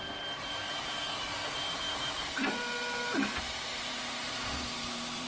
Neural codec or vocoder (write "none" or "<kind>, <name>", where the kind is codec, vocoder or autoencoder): vocoder, BigVGAN v2